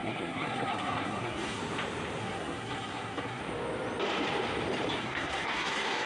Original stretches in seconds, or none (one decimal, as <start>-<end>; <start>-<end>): 1.6-2.2; 3.4-5.0